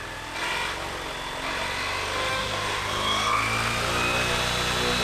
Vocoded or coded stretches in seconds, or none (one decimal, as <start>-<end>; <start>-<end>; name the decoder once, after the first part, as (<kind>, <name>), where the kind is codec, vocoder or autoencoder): 2.3-2.9 (codec, DAC)